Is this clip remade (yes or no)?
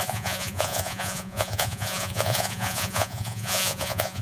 yes